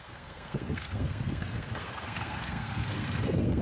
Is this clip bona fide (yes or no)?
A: no